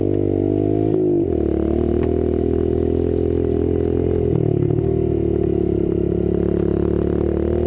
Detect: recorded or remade recorded